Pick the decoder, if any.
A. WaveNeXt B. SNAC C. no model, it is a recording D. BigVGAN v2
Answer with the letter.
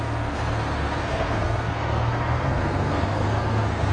B